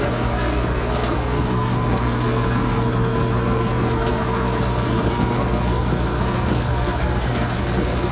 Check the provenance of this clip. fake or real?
fake